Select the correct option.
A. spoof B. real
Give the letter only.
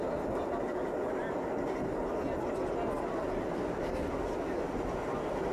B